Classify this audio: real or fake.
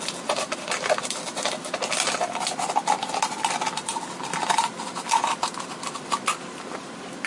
real